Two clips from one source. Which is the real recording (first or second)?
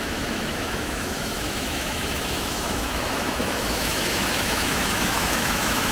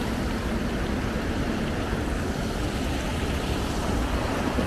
second